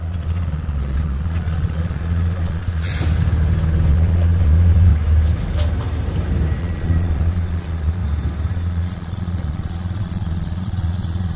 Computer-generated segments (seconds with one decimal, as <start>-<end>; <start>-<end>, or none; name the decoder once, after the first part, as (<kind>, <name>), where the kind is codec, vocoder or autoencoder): 0.0-2.9 (vocoder, Vocos); 3.9-4.9; 6.6-8.0; 8.5-11.4